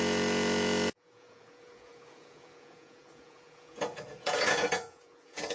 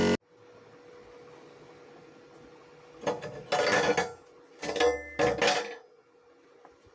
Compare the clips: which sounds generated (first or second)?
first